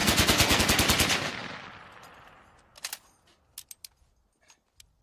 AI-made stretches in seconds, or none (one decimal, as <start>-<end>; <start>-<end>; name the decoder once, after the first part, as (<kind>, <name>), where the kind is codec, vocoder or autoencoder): 0.0-0.6 (codec, SNAC)